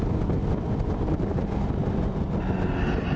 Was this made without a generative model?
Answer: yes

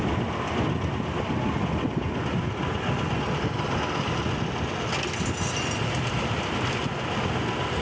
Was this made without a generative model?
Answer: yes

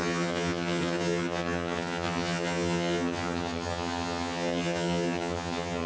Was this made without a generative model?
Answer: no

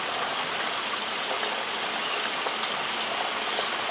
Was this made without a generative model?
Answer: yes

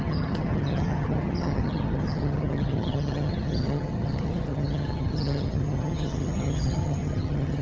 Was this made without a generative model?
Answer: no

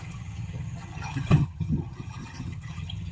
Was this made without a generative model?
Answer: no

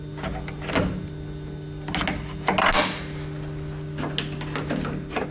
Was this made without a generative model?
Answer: yes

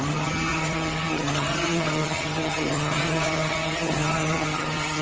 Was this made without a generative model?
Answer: no